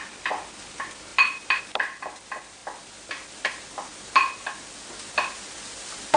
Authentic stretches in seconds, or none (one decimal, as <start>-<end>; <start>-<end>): 0.0-6.2